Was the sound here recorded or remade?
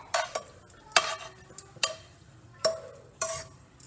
recorded